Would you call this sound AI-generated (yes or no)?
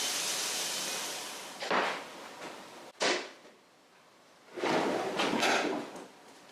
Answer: no